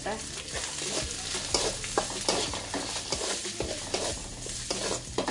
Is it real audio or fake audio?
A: real